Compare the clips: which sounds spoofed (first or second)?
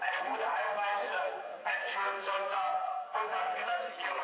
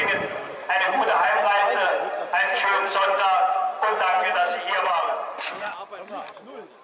first